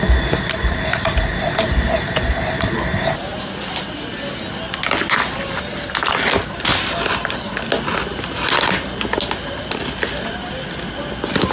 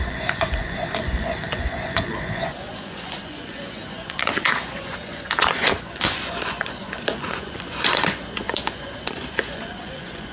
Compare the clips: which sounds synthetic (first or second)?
second